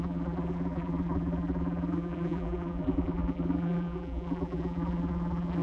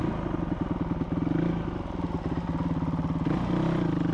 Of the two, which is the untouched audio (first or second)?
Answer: second